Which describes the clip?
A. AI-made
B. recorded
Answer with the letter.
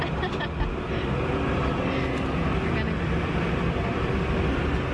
B